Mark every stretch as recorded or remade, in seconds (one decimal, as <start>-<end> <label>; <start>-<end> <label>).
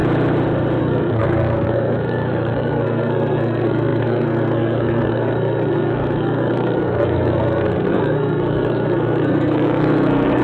0.0-0.8 recorded; 0.8-10.4 remade